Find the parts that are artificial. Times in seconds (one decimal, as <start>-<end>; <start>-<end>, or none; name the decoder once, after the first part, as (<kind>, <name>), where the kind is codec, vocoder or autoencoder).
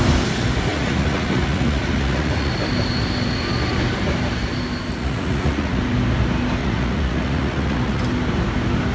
0.7-2.5 (vocoder, Vocos); 4.9-5.8; 6.6-8.0